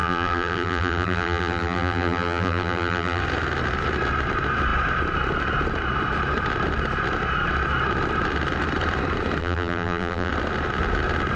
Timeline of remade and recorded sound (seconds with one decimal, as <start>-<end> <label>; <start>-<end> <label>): 0.0-3.2 remade; 3.2-9.4 recorded; 9.4-10.3 remade; 10.3-11.4 recorded